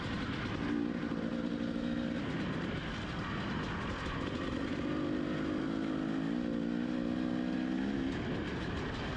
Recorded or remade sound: recorded